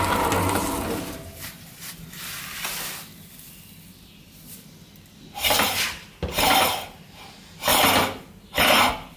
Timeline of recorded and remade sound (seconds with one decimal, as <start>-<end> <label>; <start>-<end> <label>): 0.0-9.2 recorded